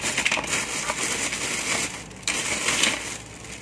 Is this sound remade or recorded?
recorded